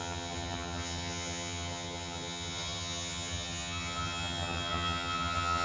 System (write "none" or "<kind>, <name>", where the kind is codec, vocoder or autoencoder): vocoder, HiFi-GAN